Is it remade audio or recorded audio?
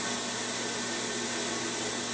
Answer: recorded